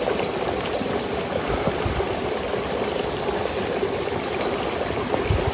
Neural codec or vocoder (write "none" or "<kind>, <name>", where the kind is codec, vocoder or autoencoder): none